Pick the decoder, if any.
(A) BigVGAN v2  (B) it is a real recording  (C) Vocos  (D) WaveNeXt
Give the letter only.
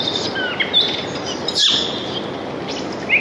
B